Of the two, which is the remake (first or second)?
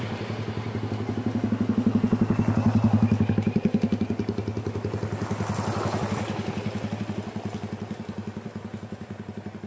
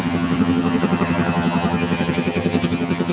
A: second